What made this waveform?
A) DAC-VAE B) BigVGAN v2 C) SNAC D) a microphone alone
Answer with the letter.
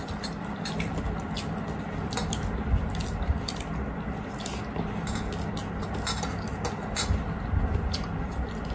D